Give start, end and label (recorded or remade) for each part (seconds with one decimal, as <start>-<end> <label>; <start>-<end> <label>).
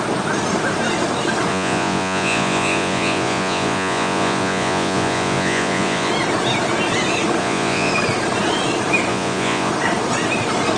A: 0.0-1.5 recorded; 1.5-6.1 remade; 6.1-7.4 recorded; 7.4-7.9 remade; 7.9-9.1 recorded; 9.1-9.7 remade; 9.7-10.8 recorded